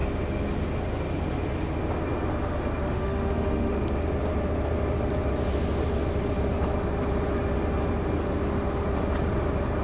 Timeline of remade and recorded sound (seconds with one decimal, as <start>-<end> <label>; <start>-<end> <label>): 0.0-2.8 recorded; 2.8-3.7 remade; 3.7-9.8 recorded